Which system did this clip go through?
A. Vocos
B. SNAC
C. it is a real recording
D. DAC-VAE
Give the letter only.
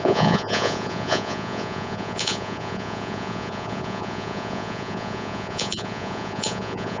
A